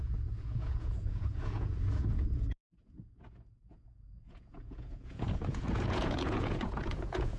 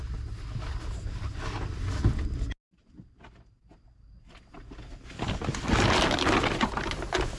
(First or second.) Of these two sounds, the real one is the second